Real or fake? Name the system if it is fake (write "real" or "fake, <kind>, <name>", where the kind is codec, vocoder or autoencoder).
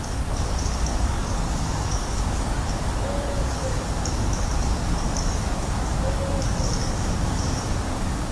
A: fake, codec, DAC